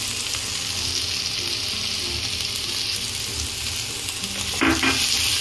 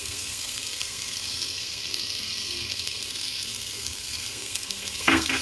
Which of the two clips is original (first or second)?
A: first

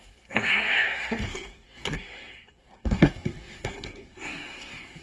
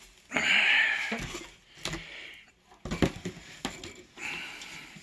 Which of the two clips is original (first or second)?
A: second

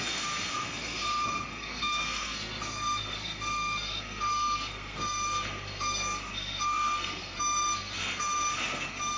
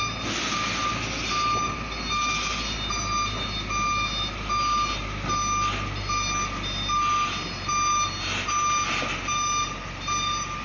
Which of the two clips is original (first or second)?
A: second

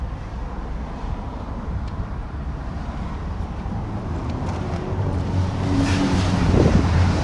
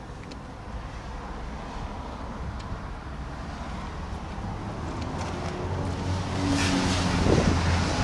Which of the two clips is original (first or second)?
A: second